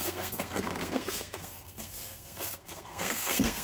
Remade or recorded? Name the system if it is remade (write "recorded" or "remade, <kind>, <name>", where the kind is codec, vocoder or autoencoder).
remade, codec, SNAC